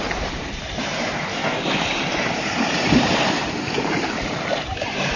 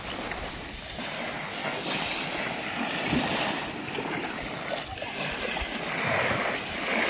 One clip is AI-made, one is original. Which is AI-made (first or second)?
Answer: first